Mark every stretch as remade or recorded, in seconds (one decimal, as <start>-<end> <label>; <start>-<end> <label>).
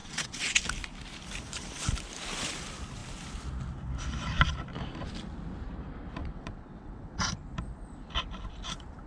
0.0-0.6 remade; 0.6-6.2 recorded; 6.2-7.3 remade; 7.3-9.1 recorded